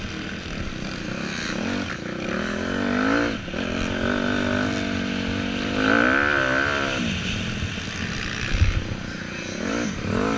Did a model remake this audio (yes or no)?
no